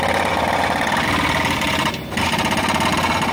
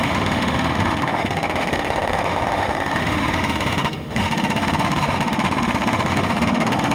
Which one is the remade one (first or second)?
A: second